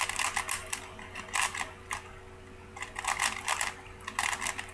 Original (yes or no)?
yes